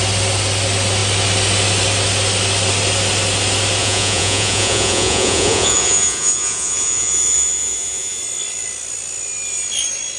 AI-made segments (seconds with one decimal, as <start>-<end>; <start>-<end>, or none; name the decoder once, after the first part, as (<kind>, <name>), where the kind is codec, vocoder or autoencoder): 3.8-8.2 (vocoder, Vocos)